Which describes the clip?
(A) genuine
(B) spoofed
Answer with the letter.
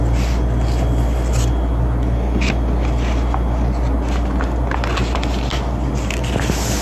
A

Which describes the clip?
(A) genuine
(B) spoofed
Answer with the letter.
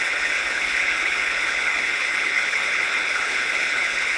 B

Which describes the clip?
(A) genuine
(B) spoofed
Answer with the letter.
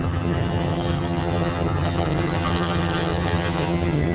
B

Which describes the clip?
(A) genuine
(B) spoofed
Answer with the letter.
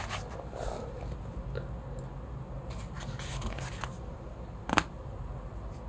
A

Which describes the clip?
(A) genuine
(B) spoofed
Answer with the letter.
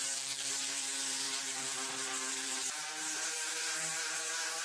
B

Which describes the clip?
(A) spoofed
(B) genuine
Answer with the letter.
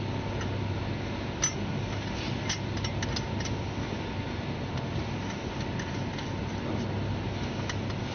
B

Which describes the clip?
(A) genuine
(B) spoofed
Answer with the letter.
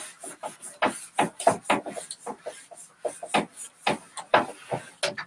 A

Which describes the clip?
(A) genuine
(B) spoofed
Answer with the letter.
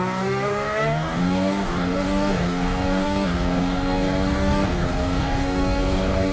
B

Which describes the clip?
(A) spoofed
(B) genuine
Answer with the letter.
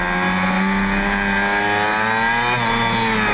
B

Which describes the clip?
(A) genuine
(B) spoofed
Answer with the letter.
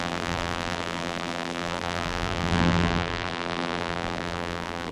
B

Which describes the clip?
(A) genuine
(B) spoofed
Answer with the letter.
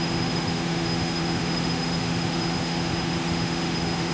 B